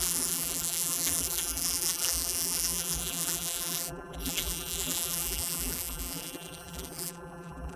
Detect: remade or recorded remade